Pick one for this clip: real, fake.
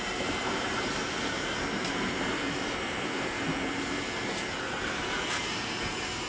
fake